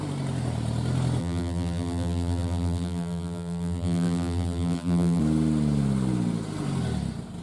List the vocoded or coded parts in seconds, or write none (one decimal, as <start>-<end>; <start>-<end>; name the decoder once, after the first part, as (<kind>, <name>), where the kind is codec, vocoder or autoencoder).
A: 1.2-5.2 (vocoder, BigVGAN v2)